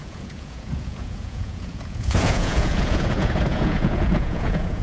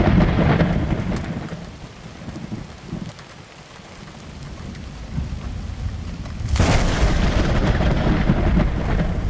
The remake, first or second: first